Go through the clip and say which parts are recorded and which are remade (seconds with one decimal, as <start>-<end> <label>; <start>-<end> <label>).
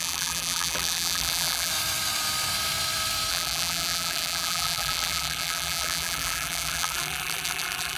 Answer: 0.0-1.7 remade; 1.7-3.3 recorded; 3.3-8.0 remade